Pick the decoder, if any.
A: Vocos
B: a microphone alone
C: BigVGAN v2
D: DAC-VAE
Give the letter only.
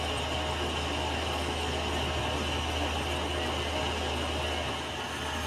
B